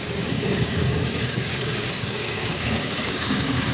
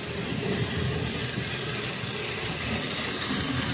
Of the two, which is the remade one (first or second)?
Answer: first